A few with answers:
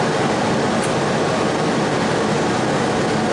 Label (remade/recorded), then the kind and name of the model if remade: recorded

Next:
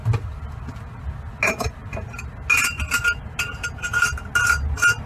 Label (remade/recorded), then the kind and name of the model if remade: recorded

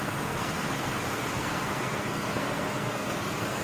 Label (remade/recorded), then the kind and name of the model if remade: remade, codec, SNAC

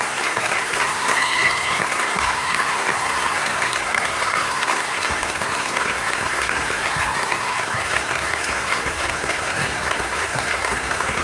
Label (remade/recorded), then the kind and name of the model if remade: remade, codec, SNAC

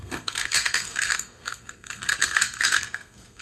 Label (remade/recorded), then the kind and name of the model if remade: remade, codec, SNAC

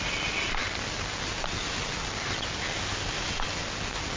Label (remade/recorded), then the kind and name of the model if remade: recorded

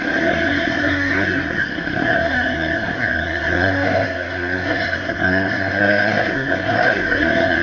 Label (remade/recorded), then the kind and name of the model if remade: remade, codec, SNAC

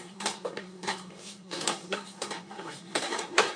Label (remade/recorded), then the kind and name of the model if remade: remade, codec, SNAC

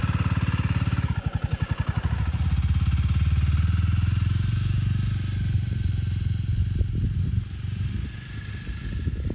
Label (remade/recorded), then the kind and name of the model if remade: recorded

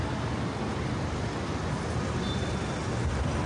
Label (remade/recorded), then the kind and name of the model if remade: recorded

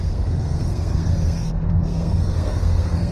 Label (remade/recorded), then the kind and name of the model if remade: remade, codec, SNAC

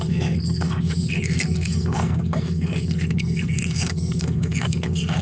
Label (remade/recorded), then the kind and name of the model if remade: remade, codec, SNAC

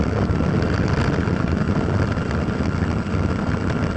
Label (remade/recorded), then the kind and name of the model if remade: recorded